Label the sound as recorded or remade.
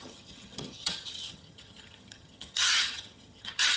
remade